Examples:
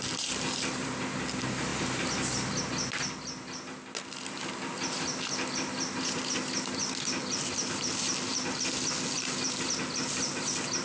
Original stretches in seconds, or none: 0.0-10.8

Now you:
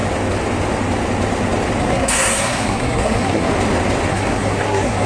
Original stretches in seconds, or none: 0.0-1.8; 3.5-4.1